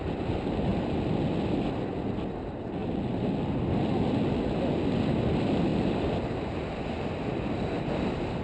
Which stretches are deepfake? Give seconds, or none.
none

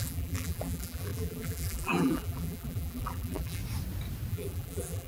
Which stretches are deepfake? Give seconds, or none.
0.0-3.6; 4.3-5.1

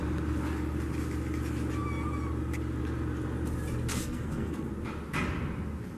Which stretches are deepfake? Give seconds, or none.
3.9-4.7

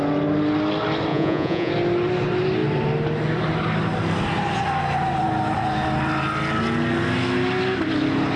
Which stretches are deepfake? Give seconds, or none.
1.1-1.7

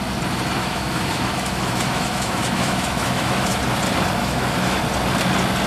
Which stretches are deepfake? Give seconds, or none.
0.6-3.6; 4.2-4.8

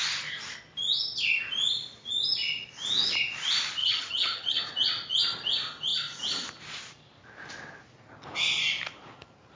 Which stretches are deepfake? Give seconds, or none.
3.8-4.6

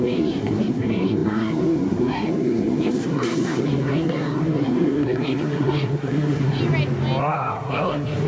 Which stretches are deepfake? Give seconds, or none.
0.0-6.6; 7.2-8.3

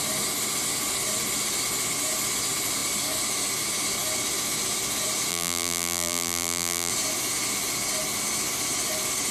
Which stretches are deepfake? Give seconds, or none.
5.3-6.9